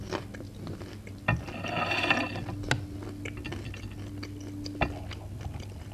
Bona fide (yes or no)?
yes